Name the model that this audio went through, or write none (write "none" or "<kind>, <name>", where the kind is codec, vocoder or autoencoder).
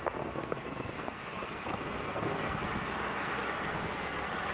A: codec, SNAC